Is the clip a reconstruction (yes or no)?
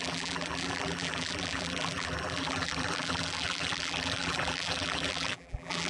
yes